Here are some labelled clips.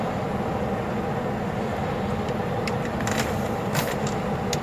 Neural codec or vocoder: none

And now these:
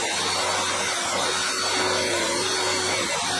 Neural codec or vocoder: none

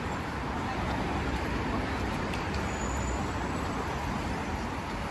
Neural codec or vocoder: none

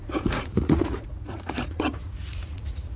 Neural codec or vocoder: vocoder, Vocos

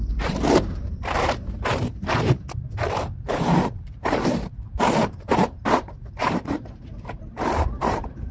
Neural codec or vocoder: vocoder, BigVGAN v2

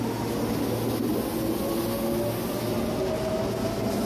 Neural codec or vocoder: none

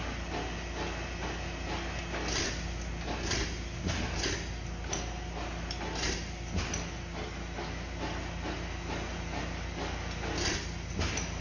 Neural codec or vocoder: none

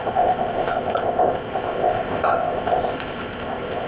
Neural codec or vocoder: codec, ZipCodec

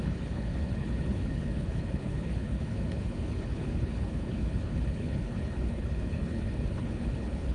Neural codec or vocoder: codec, HILCodec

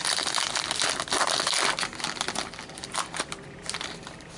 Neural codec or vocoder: none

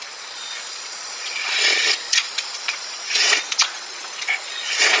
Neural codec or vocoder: vocoder, Vocos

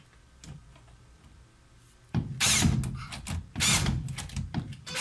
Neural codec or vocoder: none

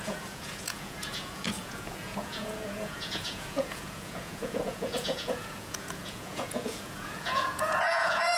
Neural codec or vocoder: vocoder, Vocos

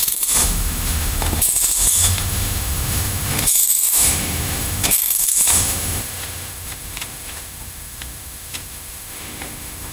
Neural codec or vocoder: autoencoder, DAC-VAE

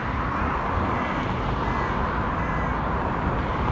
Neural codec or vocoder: none